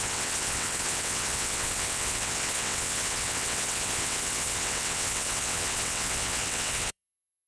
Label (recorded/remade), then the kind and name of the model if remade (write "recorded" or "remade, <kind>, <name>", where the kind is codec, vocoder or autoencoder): remade, vocoder, WaveNeXt